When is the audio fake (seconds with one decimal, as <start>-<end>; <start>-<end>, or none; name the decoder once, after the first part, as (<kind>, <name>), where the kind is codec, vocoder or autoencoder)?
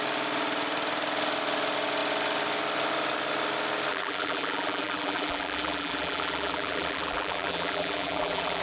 3.9-8.6 (vocoder, BigVGAN v2)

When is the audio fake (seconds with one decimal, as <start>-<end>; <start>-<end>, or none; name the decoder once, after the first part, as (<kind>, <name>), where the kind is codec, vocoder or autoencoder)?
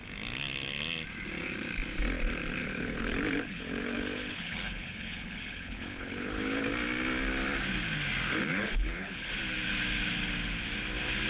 2.6-6.7 (codec, HILCodec); 8.5-9.3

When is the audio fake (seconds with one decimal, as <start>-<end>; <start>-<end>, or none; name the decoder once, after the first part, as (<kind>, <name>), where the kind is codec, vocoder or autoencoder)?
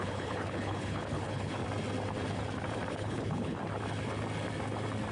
0.0-1.6 (codec, HILCodec); 2.9-3.6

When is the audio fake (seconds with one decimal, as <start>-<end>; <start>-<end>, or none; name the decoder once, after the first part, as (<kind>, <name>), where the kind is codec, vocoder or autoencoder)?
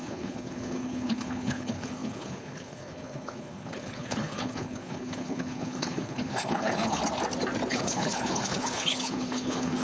0.0-7.0 (codec, HILCodec); 7.7-9.8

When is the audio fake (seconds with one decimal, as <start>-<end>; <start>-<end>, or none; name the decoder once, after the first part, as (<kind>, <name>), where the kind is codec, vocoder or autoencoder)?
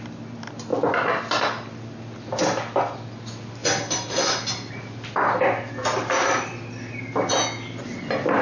none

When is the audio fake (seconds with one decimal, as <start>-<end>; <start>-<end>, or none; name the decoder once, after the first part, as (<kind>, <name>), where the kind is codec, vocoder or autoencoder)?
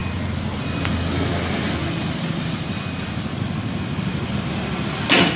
none